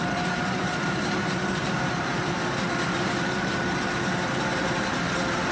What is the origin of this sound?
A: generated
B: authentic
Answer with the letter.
A